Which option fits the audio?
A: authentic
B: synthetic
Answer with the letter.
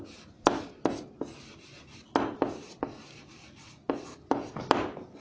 A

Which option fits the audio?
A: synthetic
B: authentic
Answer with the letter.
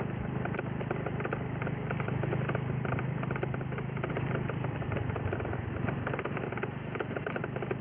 B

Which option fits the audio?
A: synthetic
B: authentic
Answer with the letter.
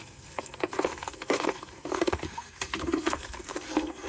A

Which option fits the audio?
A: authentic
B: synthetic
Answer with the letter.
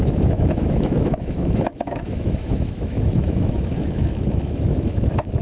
B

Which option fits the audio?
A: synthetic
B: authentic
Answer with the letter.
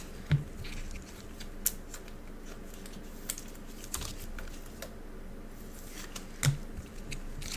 B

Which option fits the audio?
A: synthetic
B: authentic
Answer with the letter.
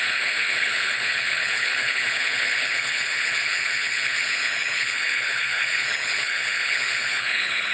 A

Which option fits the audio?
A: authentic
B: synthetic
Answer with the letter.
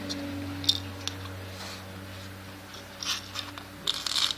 A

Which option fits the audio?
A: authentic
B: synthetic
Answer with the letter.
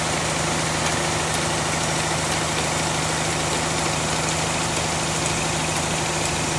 A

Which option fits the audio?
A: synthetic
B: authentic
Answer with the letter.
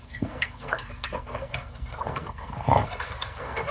A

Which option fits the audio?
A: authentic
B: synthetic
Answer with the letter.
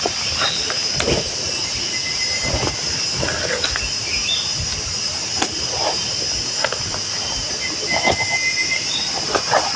A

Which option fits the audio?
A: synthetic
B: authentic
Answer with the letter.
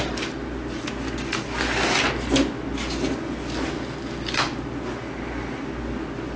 B